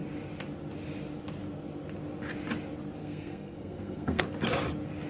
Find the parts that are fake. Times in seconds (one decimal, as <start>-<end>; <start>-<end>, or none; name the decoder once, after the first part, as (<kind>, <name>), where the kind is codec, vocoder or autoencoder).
3.0-4.2 (codec, SNAC)